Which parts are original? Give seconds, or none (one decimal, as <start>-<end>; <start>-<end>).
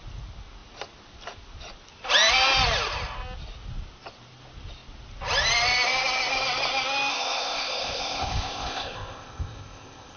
0.0-7.1